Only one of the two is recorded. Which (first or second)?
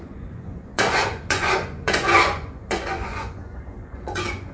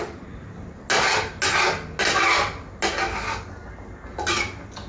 second